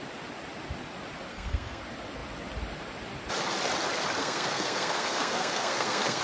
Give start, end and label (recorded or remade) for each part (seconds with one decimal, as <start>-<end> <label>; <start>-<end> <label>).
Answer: 0.0-1.3 recorded; 1.3-1.8 remade; 1.8-4.2 recorded; 4.2-6.2 remade